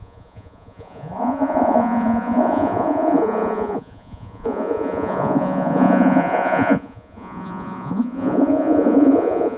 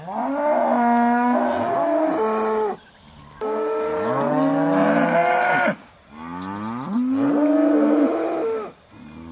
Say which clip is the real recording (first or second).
second